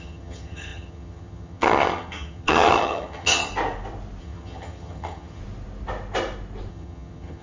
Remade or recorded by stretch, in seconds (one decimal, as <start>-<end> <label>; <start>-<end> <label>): 0.0-3.5 remade; 3.5-4.2 recorded; 4.2-5.4 remade; 5.4-6.7 recorded; 6.7-7.4 remade

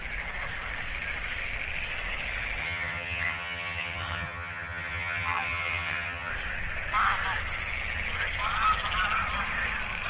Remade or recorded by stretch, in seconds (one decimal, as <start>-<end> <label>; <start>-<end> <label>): 0.0-2.6 recorded; 2.6-6.3 remade; 6.3-10.1 recorded